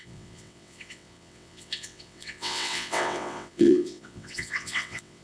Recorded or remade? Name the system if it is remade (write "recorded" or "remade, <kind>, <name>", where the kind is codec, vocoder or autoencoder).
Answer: remade, vocoder, WaveNeXt